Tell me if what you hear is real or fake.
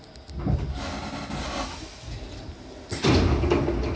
real